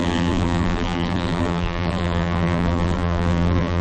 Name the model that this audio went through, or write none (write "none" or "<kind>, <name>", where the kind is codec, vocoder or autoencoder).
vocoder, BigVGAN v2